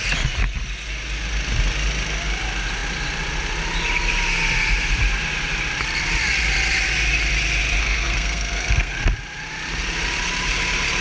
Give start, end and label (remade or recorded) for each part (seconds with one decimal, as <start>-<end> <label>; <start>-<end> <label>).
0.0-7.8 recorded; 7.8-9.0 remade; 9.0-11.0 recorded